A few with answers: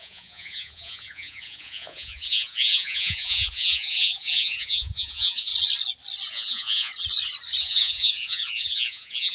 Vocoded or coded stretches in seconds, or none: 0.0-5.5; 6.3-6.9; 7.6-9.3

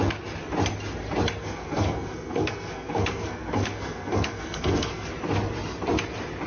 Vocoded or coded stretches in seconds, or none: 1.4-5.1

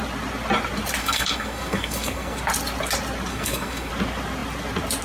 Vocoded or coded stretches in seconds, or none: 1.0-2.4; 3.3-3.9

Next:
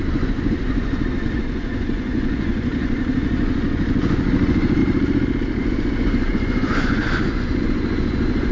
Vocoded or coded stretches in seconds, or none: 0.0-4.8; 5.6-8.5

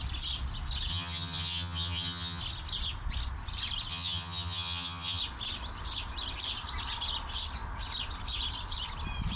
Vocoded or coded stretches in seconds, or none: 0.9-2.4; 3.9-5.2